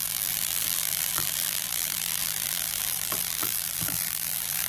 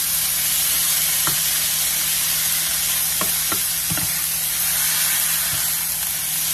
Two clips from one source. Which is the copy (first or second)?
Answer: first